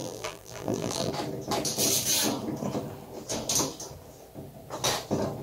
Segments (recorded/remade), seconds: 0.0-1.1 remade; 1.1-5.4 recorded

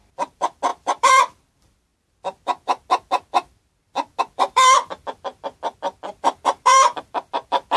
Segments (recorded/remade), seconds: 0.0-1.9 remade; 1.9-4.2 recorded; 4.2-5.3 remade; 5.3-6.0 recorded; 6.0-7.8 remade

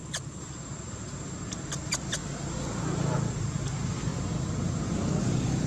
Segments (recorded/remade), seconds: 0.0-2.2 remade; 2.2-2.8 recorded; 2.8-4.1 remade; 4.1-5.2 recorded; 5.2-5.7 remade

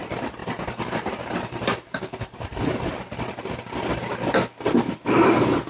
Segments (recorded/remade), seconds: 0.0-5.7 recorded